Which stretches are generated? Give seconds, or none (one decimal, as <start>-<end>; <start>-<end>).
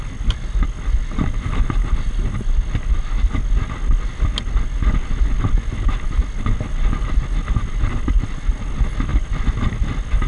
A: none